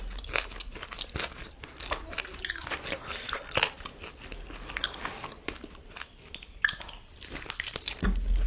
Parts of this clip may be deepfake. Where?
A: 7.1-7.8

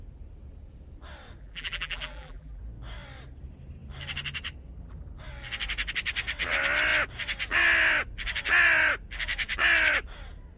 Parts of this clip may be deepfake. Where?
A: 1.4-2.6

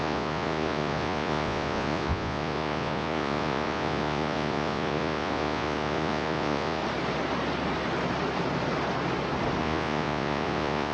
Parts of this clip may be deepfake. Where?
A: 0.0-6.8; 9.6-10.9

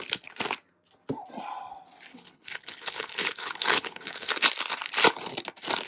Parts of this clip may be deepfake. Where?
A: 2.1-4.3

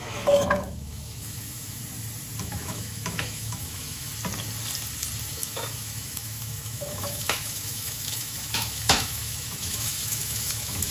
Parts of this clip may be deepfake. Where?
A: 0.0-1.8; 2.4-4.1; 5.3-10.9

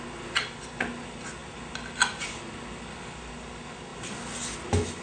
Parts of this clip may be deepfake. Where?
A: none

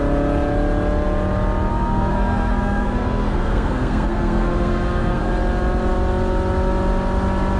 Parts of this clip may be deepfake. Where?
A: 1.7-5.3